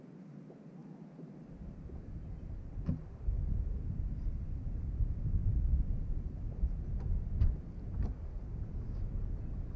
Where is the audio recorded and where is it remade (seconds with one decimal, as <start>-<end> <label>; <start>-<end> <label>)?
0.0-9.8 recorded

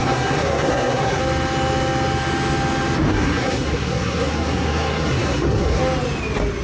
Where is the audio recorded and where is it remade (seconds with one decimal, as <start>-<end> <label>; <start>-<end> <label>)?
0.0-1.2 remade; 1.2-3.1 recorded; 3.1-5.8 remade; 5.8-6.6 recorded